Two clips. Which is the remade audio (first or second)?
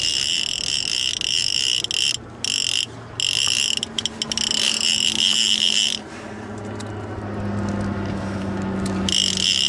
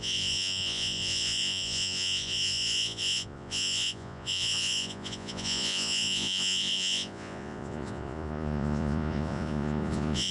second